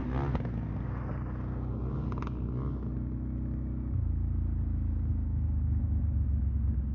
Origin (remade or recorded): recorded